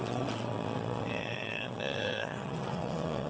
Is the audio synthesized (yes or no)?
yes